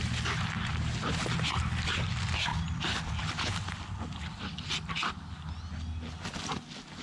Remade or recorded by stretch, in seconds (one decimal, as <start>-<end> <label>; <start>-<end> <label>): 0.0-2.5 recorded; 2.5-3.1 remade; 3.1-7.0 recorded